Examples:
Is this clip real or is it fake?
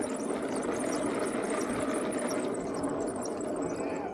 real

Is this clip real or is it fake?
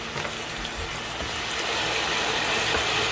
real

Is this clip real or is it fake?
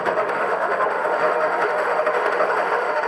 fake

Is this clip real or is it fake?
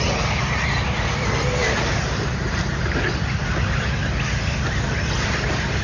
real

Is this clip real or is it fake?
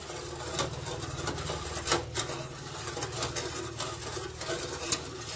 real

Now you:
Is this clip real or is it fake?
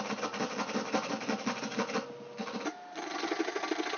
real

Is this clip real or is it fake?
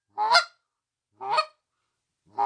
real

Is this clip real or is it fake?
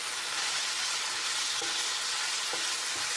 real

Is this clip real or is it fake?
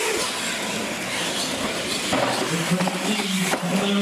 real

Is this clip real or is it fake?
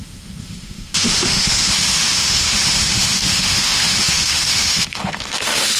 fake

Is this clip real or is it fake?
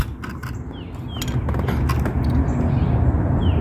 real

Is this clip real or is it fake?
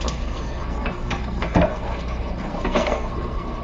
fake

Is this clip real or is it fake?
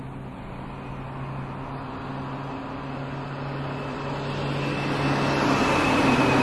real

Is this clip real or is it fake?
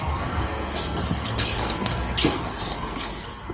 fake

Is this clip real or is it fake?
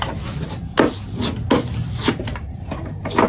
real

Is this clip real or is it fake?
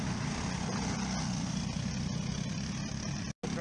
real